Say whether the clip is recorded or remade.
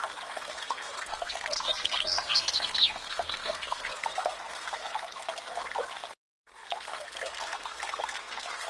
remade